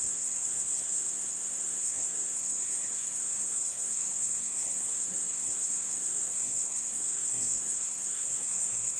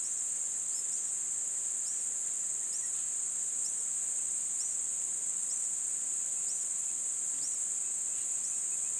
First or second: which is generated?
first